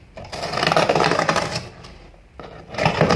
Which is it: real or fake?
real